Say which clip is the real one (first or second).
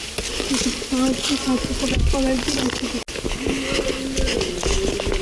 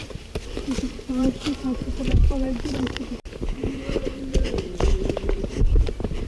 first